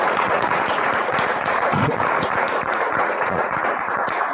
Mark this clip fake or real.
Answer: fake